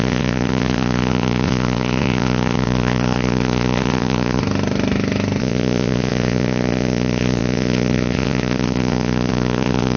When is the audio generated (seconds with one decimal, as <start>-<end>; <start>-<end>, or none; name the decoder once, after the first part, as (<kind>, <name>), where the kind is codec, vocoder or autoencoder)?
0.0-4.4 (vocoder, Vocos); 5.4-10.0